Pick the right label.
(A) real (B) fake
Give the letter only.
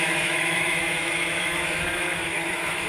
B